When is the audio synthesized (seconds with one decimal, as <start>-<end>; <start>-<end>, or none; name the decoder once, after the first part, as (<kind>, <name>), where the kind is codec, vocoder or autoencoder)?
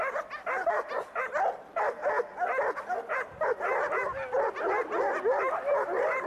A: 0.6-1.2 (vocoder, BigVGAN v2)